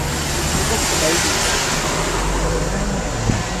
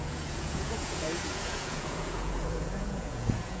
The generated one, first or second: second